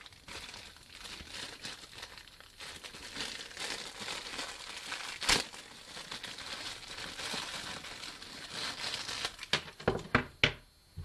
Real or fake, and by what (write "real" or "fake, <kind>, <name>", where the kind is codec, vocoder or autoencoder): real